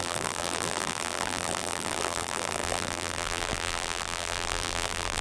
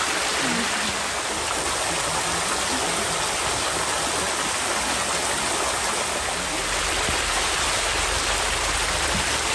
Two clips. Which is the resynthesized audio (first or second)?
first